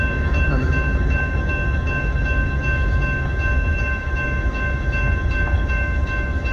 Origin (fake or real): fake